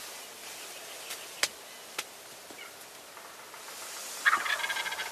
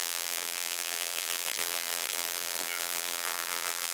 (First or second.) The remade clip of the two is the second